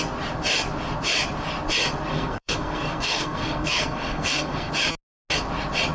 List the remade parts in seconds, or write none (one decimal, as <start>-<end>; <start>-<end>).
2.1-4.7

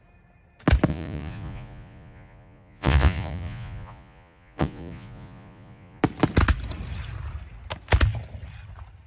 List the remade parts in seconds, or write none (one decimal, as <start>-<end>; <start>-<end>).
0.9-6.0

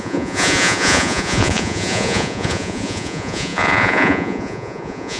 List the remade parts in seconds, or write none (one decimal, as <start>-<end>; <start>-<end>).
0.0-5.2

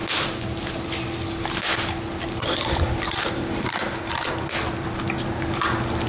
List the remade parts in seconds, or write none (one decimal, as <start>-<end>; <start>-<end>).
none

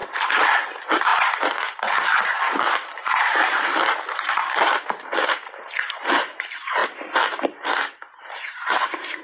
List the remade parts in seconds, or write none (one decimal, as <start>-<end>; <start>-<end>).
0.0-6.8; 7.9-9.2